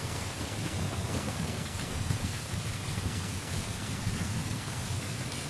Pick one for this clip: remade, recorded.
remade